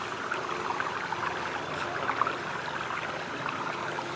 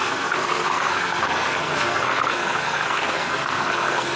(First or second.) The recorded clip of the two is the first